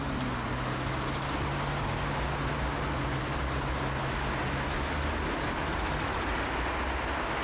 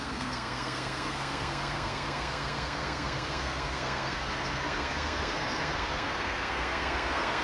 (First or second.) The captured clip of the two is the first